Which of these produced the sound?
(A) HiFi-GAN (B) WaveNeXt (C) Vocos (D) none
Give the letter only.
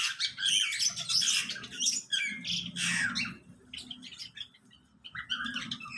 D